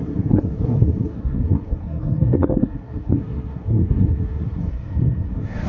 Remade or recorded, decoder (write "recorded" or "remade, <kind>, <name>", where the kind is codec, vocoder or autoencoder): remade, codec, SNAC